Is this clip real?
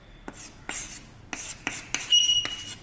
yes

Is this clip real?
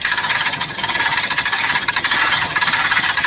no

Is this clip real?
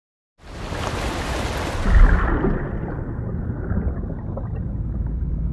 yes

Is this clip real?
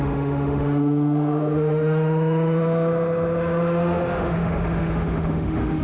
no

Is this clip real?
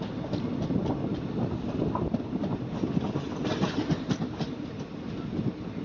yes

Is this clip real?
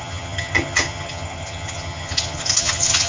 no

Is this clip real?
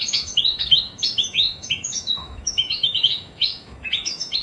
no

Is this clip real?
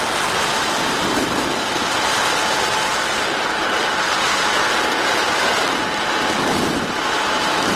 no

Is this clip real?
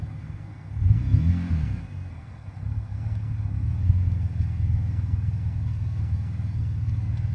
no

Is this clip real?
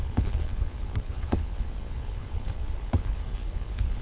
no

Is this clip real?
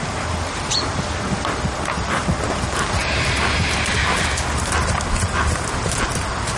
yes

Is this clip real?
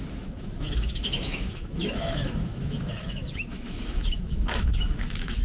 no